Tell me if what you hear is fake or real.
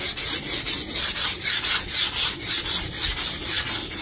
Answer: real